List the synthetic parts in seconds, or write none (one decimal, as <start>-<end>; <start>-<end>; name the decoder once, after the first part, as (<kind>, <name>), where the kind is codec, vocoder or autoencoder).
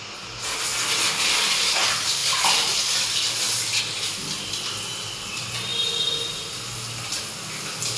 none